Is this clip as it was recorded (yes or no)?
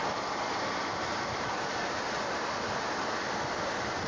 yes